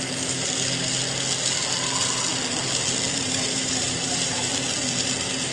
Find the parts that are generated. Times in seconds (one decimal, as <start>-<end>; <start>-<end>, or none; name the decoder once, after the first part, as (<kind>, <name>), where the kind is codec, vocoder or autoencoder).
3.1-4.5 (vocoder, BigVGAN v2)